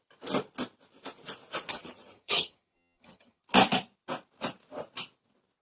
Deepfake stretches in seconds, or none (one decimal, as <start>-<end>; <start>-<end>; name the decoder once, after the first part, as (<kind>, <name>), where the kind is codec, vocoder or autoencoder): 1.7-3.4 (vocoder, HiFi-GAN)